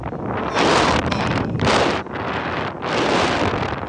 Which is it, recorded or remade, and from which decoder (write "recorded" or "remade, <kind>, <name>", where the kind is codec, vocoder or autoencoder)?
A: remade, vocoder, BigVGAN v2